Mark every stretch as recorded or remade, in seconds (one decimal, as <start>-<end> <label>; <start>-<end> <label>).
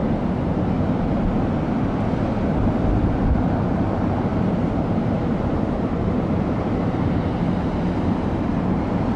0.0-4.3 recorded; 4.3-7.6 remade; 7.6-9.2 recorded